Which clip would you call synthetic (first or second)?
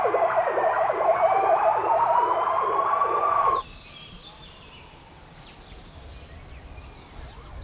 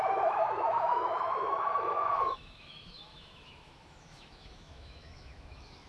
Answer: second